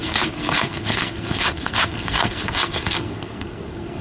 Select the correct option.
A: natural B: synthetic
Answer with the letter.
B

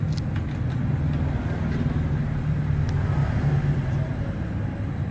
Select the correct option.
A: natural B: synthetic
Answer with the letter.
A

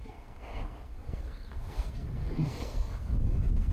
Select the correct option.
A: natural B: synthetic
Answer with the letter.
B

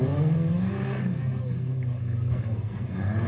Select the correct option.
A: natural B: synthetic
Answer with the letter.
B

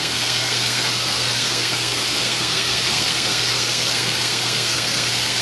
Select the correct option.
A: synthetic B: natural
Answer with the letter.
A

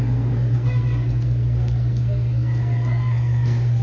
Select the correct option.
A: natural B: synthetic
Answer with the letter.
B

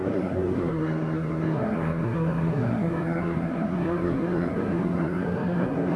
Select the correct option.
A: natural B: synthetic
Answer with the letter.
B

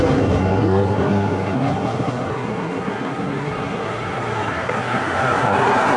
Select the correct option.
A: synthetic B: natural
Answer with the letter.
A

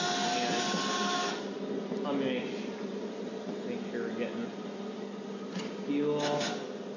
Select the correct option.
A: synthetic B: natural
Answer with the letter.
B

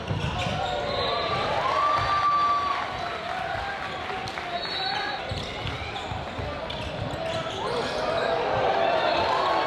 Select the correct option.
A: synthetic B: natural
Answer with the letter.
B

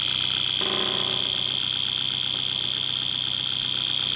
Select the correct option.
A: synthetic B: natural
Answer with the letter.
B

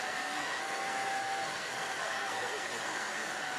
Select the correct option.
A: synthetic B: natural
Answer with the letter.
A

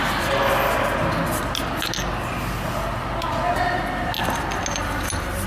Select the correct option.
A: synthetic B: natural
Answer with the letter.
B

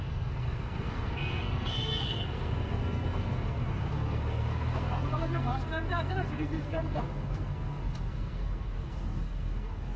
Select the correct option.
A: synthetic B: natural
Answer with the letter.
A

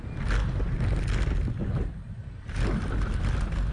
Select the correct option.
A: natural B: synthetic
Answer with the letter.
A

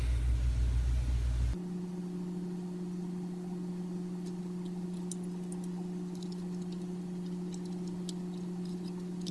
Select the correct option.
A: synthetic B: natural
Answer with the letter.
B